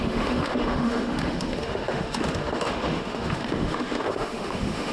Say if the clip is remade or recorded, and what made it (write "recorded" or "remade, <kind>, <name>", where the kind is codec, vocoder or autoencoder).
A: remade, autoencoder, DAC-VAE